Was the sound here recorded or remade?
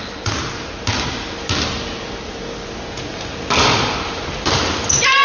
recorded